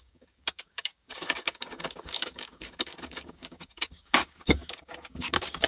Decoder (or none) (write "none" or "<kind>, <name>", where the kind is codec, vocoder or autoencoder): codec, DAC